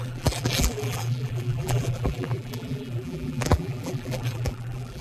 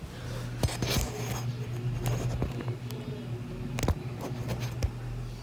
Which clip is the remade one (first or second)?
first